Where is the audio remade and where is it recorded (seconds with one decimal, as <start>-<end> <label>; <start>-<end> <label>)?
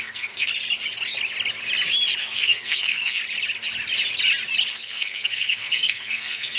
0.0-0.5 remade; 0.5-2.2 recorded; 2.2-3.2 remade; 3.2-4.7 recorded; 4.7-6.6 remade